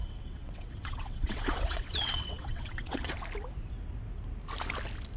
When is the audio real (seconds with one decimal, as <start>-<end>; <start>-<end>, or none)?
3.1-5.2